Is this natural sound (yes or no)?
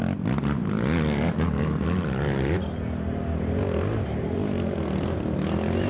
yes